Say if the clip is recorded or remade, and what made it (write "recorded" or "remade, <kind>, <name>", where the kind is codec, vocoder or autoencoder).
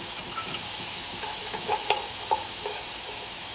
remade, autoencoder, DAC-VAE